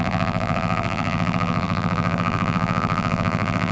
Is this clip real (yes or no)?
no